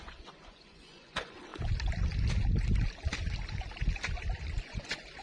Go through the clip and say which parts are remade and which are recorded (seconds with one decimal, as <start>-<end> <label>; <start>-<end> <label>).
0.0-1.5 remade; 1.5-4.6 recorded; 4.6-5.2 remade